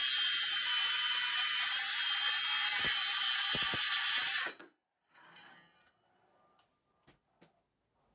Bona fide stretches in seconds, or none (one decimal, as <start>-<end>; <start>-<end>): 0.0-8.1